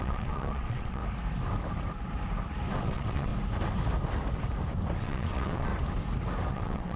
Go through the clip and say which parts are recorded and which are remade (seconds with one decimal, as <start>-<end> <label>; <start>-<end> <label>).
0.0-1.0 remade; 1.0-2.8 recorded; 2.8-3.3 remade; 3.3-5.0 recorded; 5.0-5.7 remade; 5.7-6.5 recorded; 6.5-7.0 remade